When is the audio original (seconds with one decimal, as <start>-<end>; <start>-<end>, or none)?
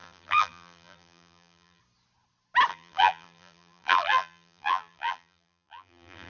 1.8-2.7